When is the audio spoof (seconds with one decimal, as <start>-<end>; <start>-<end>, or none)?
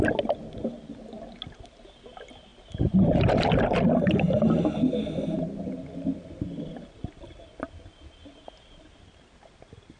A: none